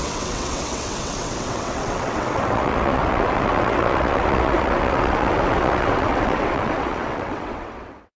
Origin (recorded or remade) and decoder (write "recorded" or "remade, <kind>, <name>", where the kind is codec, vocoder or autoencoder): remade, vocoder, WaveNeXt